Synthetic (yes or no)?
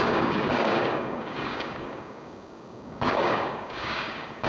yes